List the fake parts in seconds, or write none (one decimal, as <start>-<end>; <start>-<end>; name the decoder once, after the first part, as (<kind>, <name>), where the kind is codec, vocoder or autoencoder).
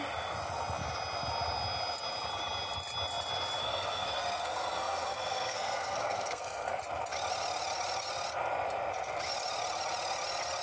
3.6-6.8 (codec, SNAC)